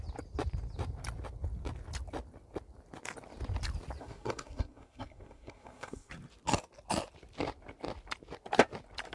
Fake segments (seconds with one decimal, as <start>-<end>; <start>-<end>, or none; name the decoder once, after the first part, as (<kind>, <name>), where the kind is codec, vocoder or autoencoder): 4.0-6.1 (codec, SNAC)